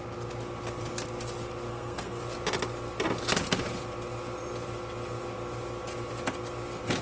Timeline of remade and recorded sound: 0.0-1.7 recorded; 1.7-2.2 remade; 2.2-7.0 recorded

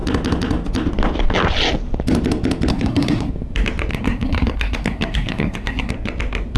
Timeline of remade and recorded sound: 0.0-2.7 recorded; 2.7-3.3 remade; 3.3-3.9 recorded; 3.9-5.9 remade; 5.9-6.6 recorded

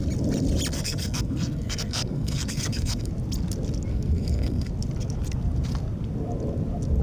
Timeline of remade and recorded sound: 0.0-0.7 recorded; 0.7-3.1 remade; 3.1-3.9 recorded; 3.9-4.7 remade; 4.7-7.0 recorded

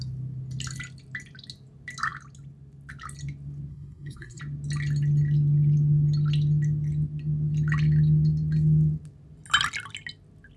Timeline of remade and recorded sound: 0.0-3.7 recorded; 3.7-4.4 remade; 4.4-10.6 recorded

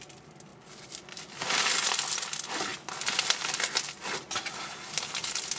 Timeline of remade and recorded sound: 0.0-5.6 recorded

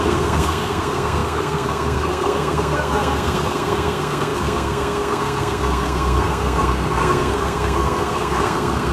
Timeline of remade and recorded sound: 0.0-8.9 remade